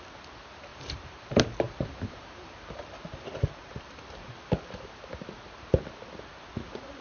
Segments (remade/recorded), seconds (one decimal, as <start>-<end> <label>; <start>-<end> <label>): 0.0-0.7 recorded; 0.7-4.9 remade; 4.9-7.0 recorded